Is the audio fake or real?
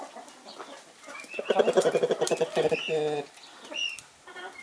real